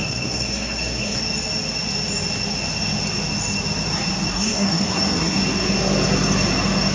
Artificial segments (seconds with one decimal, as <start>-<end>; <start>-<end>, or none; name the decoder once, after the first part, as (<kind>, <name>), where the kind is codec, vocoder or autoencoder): 0.0-1.2 (codec, SNAC); 4.3-5.4